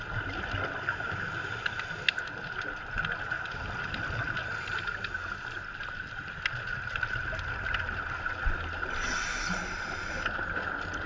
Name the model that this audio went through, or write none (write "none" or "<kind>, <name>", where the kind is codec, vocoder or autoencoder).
none